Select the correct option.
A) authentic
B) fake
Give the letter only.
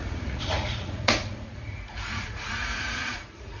B